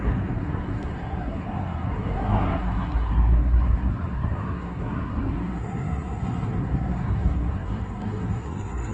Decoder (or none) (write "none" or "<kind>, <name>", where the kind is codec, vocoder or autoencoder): codec, SNAC